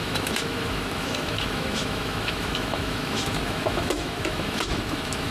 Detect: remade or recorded remade